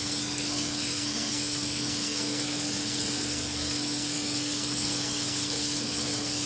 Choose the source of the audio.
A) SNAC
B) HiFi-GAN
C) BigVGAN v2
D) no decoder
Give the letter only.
A